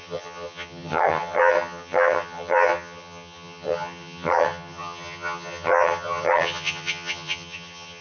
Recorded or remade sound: remade